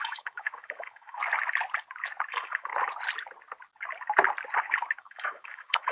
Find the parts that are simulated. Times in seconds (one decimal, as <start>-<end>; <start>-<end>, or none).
0.0-1.2; 2.3-2.7; 5.0-5.9